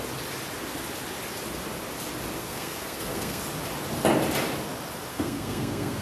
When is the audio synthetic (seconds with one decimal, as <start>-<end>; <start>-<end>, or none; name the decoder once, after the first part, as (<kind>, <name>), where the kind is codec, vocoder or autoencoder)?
2.4-3.4 (codec, SNAC); 5.1-6.0